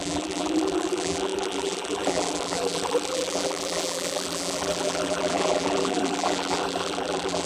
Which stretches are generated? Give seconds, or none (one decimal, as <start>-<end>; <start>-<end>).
0.0-7.5

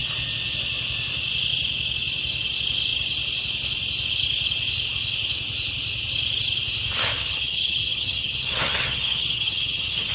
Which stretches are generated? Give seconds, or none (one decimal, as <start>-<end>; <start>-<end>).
7.2-10.1

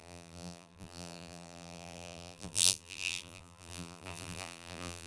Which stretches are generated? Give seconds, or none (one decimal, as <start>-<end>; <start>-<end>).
0.0-5.1

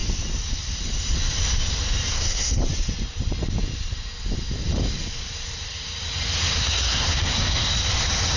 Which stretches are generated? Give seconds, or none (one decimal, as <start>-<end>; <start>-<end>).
2.1-2.6; 6.6-7.7

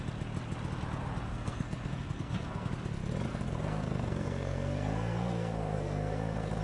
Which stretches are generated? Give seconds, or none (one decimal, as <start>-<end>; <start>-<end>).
1.3-2.7; 3.3-6.6

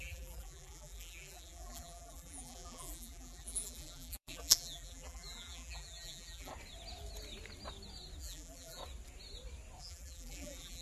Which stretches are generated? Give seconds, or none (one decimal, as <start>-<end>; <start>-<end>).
0.0-6.5; 8.2-8.8; 9.8-10.8

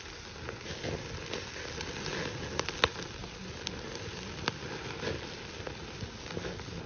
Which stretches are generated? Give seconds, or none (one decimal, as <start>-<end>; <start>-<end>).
none